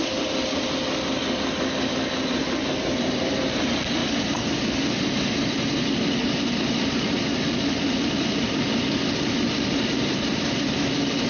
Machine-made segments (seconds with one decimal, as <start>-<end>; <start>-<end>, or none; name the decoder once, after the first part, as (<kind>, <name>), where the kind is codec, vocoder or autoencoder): none